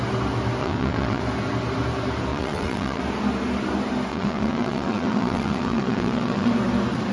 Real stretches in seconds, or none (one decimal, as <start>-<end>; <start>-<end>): 0.0-0.6; 1.2-2.3; 3.0-4.1; 6.5-7.1